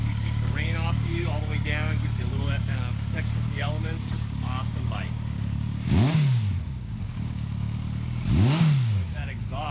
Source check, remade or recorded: remade